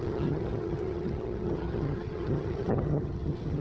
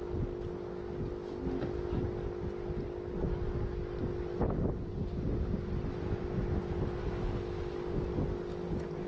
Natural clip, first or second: second